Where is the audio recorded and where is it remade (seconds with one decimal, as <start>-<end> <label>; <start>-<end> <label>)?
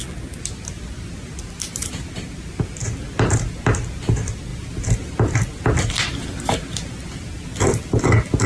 0.0-8.5 recorded